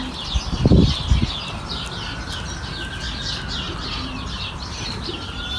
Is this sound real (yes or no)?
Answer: yes